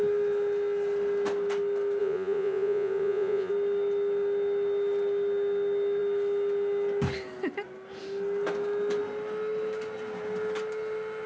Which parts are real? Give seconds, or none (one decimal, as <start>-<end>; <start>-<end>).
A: 0.0-2.0; 3.5-11.3